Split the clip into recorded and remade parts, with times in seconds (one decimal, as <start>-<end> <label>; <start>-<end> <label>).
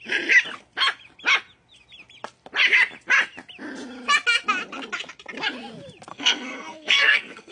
0.0-6.1 recorded; 6.1-7.5 remade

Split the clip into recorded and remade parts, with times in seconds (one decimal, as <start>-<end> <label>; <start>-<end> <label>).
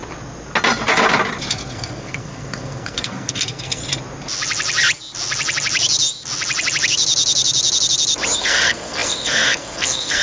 0.0-1.5 recorded; 1.5-3.8 remade; 3.8-8.4 recorded; 8.4-10.2 remade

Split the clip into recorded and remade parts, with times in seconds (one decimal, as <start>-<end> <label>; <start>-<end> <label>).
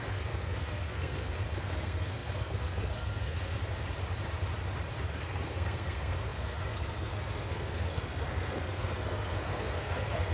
0.0-3.6 remade; 3.6-5.2 recorded; 5.2-10.3 remade